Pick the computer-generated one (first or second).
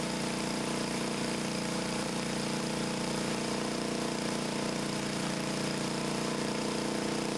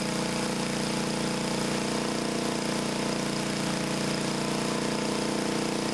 first